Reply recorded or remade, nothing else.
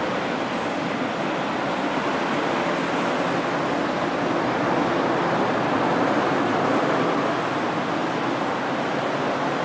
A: recorded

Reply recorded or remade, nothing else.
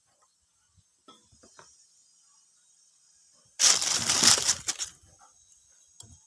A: recorded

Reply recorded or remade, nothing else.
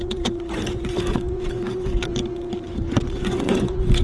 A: remade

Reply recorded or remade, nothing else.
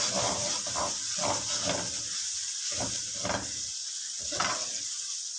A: recorded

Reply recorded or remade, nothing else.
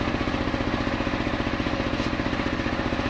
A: recorded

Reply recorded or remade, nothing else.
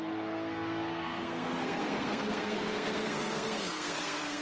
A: remade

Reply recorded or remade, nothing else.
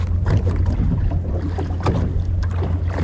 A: recorded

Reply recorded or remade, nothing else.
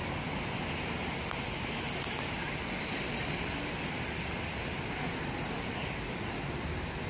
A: recorded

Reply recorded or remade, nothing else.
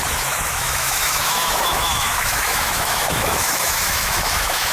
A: remade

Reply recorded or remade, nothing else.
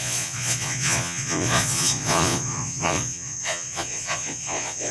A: remade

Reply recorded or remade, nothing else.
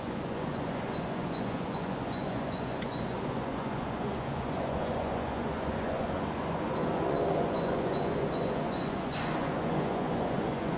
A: remade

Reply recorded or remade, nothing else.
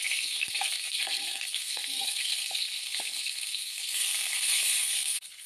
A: remade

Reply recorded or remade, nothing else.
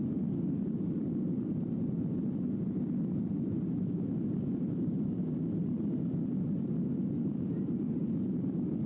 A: recorded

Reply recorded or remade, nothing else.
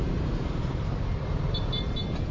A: recorded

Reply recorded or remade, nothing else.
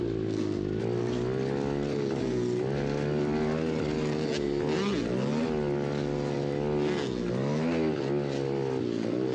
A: recorded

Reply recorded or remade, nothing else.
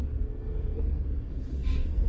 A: remade